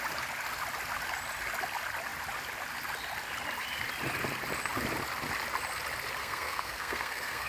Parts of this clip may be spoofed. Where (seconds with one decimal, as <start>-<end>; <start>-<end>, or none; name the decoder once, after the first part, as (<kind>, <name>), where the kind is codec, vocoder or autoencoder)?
6.2-7.5 (codec, SNAC)